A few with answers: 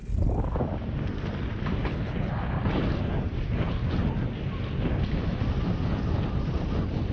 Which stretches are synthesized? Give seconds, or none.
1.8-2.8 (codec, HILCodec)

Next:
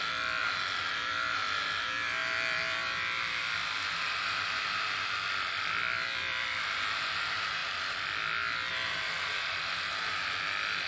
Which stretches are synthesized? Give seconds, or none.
0.0-0.4 (vocoder, BigVGAN v2); 0.9-10.9

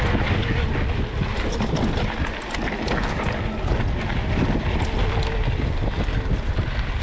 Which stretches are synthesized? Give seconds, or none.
none

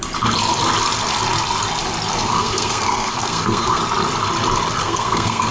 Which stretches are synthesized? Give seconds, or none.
2.1-3.8 (codec, SNAC); 4.8-5.5

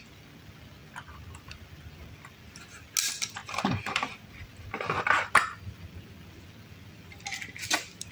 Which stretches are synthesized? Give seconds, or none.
none

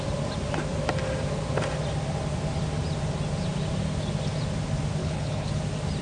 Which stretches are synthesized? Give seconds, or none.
5.0-5.6 (codec, HILCodec)